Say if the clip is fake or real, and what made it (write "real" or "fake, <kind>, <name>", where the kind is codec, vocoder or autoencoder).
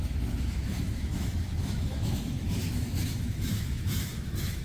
fake, autoencoder, DAC-VAE